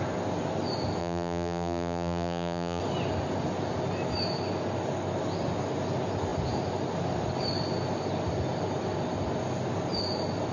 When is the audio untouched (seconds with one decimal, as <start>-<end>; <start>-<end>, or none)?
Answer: 0.0-1.0; 2.8-10.5